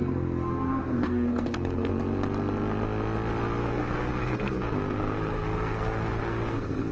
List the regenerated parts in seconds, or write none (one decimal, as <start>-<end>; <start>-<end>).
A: 0.0-1.9; 3.6-6.9